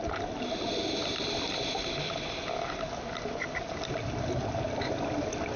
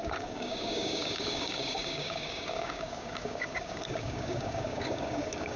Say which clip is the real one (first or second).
first